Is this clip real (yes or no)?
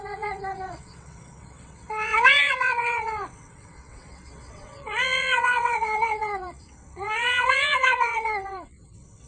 no